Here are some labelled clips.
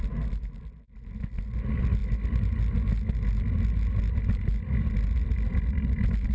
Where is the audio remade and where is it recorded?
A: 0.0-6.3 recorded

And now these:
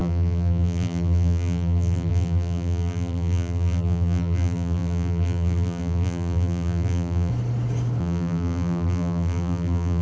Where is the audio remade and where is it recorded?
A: 0.0-7.3 remade; 7.3-8.0 recorded; 8.0-10.0 remade

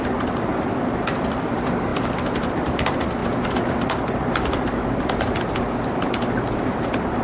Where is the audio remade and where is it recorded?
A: 0.0-3.2 remade; 3.2-3.7 recorded; 3.7-7.2 remade

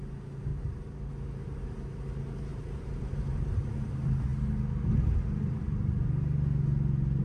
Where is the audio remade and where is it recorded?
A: 0.0-0.5 recorded; 0.5-1.1 remade; 1.1-2.5 recorded; 2.5-3.2 remade; 3.2-7.2 recorded